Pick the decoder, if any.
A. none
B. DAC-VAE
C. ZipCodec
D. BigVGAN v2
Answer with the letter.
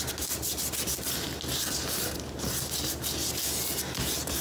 A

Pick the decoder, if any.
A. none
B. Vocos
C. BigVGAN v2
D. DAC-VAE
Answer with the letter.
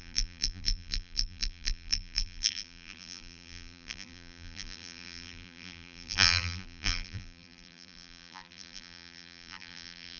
C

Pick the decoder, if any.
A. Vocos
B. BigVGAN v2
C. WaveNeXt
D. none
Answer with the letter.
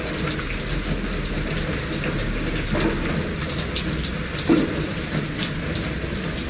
D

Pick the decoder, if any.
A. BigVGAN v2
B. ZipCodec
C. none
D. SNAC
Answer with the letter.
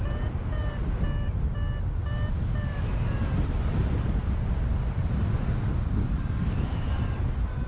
C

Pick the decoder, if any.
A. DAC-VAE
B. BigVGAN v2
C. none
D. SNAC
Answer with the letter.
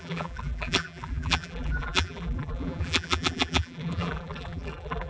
B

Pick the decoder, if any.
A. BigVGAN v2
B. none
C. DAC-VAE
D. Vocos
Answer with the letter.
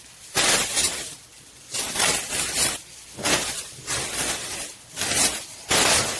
A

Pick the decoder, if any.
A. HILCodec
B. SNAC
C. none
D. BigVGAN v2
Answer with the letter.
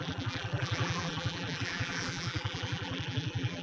D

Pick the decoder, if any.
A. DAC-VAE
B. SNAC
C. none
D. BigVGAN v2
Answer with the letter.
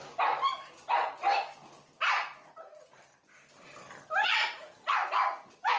C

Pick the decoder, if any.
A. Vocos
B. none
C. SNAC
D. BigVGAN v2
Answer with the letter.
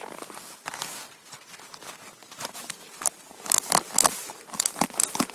B